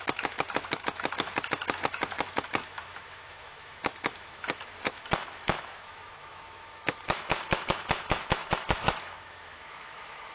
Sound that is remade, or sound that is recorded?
remade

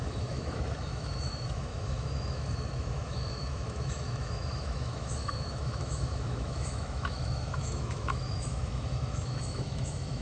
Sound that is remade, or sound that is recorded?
remade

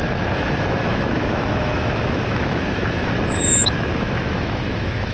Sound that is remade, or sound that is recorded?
remade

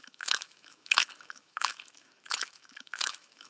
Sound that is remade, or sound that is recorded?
remade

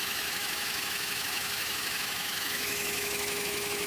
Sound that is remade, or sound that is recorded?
remade